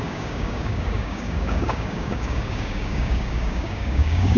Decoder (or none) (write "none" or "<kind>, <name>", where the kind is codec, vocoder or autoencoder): codec, DAC